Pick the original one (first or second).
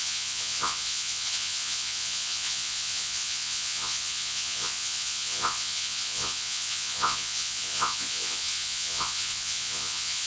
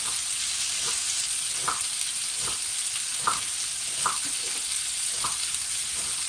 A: second